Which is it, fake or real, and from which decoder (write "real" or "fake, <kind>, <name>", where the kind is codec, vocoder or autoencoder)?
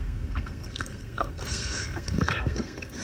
fake, codec, SNAC